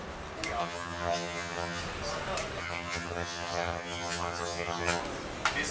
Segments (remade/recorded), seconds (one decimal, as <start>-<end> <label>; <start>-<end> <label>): 0.0-0.6 recorded; 0.6-1.8 remade; 1.8-2.6 recorded; 2.6-5.0 remade; 5.0-5.7 recorded